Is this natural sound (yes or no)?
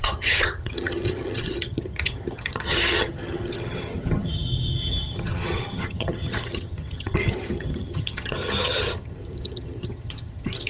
no